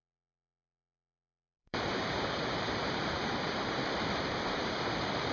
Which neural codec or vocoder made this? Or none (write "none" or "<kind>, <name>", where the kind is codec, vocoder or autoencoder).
vocoder, BigVGAN v2